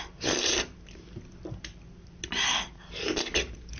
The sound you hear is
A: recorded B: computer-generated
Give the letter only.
A